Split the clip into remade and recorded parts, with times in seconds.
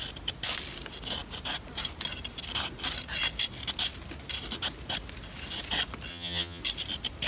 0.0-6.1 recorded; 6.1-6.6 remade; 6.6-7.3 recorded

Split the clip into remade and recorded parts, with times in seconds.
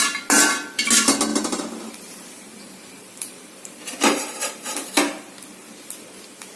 0.0-1.3 recorded; 1.3-5.0 remade; 5.0-6.6 recorded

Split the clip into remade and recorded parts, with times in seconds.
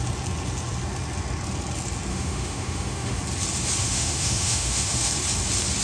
0.0-2.1 recorded; 2.1-3.2 remade; 3.2-3.8 recorded; 3.8-5.1 remade; 5.1-5.8 recorded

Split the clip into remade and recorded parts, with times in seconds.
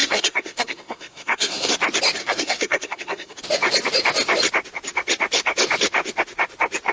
0.0-1.7 remade; 1.7-2.2 recorded; 2.2-3.4 remade; 3.4-6.9 recorded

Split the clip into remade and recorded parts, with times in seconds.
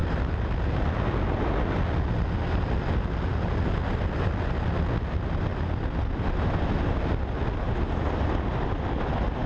0.0-9.5 recorded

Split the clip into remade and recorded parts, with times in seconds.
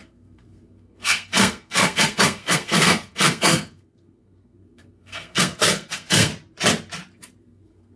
0.0-6.3 remade; 6.3-7.4 recorded; 7.4-8.0 remade